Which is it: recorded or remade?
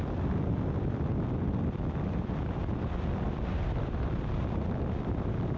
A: remade